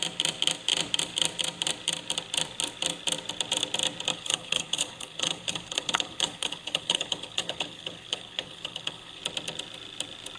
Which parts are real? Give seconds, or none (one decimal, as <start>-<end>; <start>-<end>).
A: 0.0-4.1; 9.2-10.4